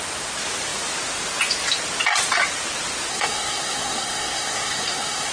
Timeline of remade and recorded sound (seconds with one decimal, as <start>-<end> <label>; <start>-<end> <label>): 0.0-3.1 recorded; 3.1-5.3 remade